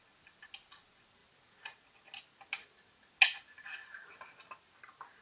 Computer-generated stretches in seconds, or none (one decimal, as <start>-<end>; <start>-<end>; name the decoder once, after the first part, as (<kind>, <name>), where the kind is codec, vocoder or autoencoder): none